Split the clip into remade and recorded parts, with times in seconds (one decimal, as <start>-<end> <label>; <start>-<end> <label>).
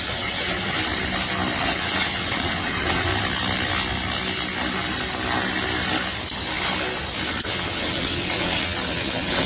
0.0-0.9 remade; 0.9-1.6 recorded; 1.6-3.1 remade; 3.1-7.3 recorded; 7.3-9.5 remade